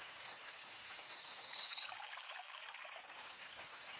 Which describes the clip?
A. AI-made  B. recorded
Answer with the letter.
A